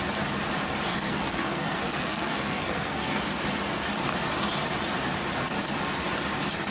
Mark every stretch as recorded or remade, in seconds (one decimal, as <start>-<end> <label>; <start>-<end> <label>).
0.0-0.9 recorded; 0.9-3.2 remade; 3.2-6.7 recorded